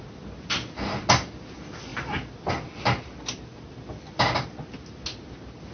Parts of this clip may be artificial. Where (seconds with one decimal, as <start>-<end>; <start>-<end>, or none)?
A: none